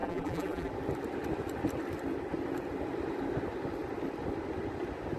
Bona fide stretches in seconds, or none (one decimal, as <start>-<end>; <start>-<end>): 0.7-5.2